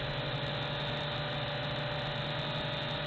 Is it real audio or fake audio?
real